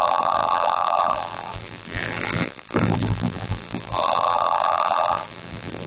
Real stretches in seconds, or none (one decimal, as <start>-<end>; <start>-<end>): none